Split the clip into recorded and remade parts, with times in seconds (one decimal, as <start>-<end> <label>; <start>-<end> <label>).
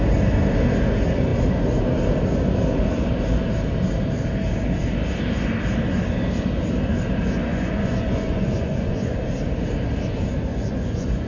0.0-7.5 recorded; 7.5-9.2 remade; 9.2-10.5 recorded; 10.5-11.3 remade